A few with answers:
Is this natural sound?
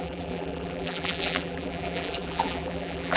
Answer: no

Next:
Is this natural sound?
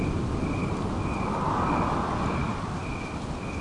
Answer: yes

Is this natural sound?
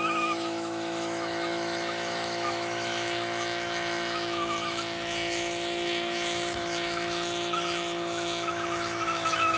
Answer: no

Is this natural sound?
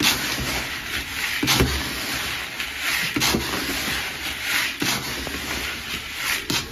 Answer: yes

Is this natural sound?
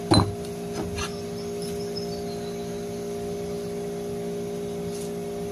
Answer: yes